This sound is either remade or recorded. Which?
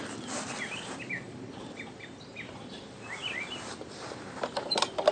remade